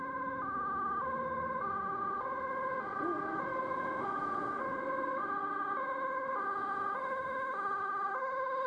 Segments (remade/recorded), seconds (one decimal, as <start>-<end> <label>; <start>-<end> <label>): 0.0-3.5 recorded; 3.5-4.6 remade; 4.6-8.7 recorded